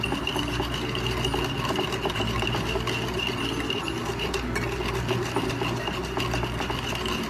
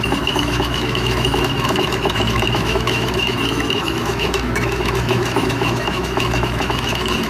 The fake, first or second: second